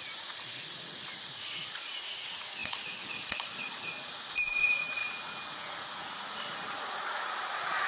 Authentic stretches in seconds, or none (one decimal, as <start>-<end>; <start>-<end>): none